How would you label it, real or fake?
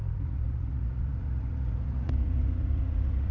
fake